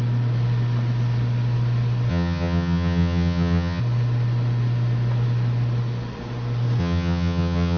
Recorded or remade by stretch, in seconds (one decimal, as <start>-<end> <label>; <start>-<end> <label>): 0.0-2.1 recorded; 2.1-3.8 remade; 3.8-6.8 recorded; 6.8-7.8 remade